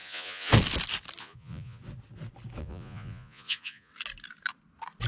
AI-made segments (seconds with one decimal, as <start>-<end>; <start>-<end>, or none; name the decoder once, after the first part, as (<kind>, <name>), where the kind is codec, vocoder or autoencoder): 0.0-0.5 (vocoder, Vocos); 1.2-1.8; 2.6-3.9